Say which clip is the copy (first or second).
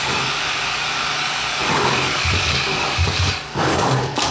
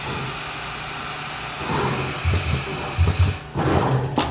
first